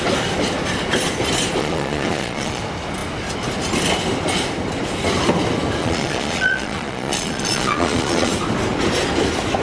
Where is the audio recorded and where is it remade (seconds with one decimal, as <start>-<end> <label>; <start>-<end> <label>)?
0.0-1.6 recorded; 1.6-2.6 remade; 2.6-5.8 recorded; 5.8-8.3 remade; 8.3-9.6 recorded